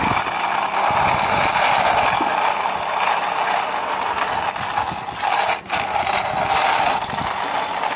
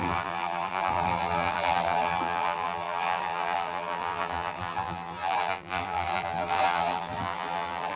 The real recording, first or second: first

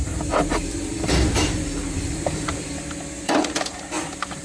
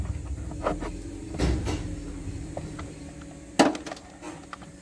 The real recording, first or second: second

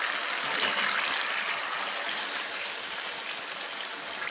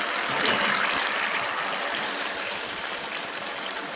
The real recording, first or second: first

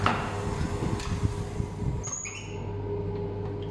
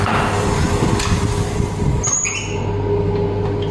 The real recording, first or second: first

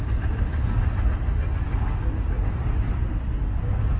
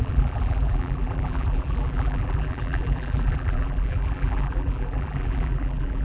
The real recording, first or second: first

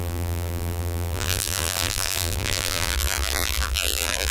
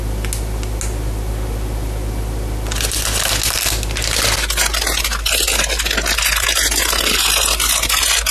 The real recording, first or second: second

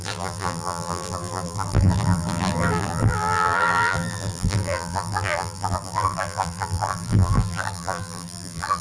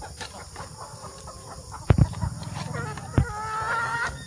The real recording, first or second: second